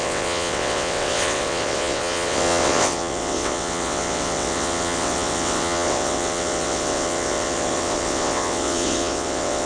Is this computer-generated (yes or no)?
yes